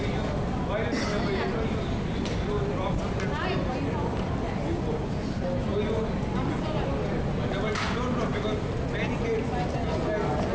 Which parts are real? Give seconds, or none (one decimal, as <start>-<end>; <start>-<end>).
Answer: 0.0-10.5